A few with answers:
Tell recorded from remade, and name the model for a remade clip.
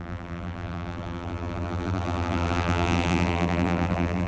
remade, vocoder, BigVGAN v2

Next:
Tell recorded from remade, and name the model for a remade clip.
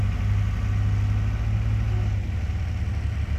recorded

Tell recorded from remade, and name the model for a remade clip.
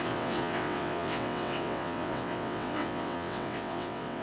remade, vocoder, WaveNeXt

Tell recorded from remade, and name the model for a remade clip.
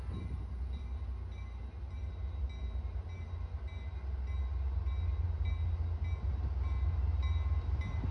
recorded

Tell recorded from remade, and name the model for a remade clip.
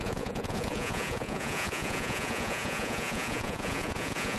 remade, vocoder, Vocos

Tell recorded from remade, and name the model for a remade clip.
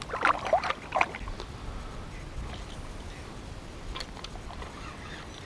recorded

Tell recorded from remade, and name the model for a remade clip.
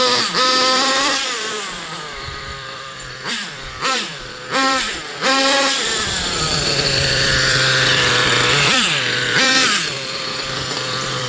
remade, vocoder, BigVGAN v2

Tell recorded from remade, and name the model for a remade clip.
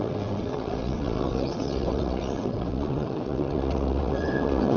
remade, vocoder, WaveNeXt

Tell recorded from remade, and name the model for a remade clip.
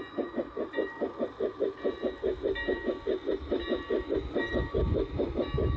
recorded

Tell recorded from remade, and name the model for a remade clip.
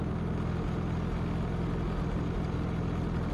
recorded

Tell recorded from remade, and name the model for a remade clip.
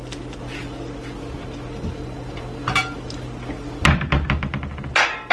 recorded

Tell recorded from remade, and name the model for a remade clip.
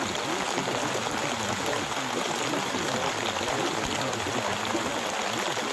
recorded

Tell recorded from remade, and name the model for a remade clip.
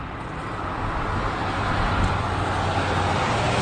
recorded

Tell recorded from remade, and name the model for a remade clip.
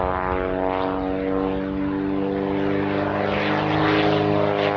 recorded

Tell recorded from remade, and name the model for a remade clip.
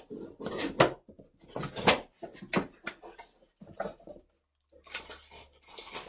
recorded